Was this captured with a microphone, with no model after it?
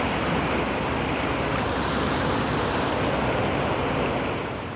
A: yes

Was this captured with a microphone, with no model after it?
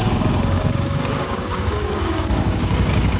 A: no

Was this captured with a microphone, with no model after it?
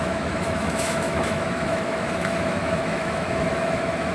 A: no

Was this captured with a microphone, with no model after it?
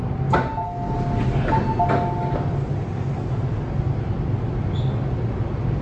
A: yes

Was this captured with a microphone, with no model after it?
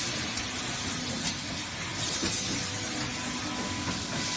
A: yes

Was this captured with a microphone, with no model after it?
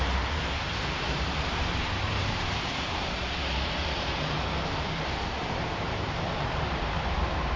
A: no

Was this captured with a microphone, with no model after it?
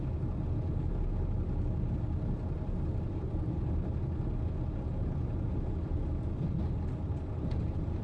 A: yes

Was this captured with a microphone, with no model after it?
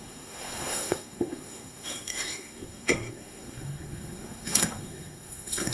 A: no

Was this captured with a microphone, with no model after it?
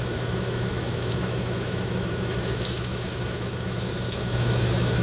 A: no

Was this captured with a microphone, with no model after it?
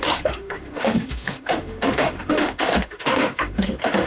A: no